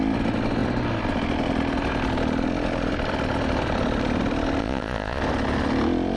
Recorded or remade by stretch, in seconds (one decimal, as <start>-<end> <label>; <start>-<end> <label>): 0.0-4.6 recorded; 4.6-5.2 remade; 5.2-6.2 recorded